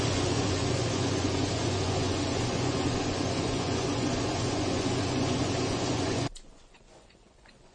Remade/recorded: remade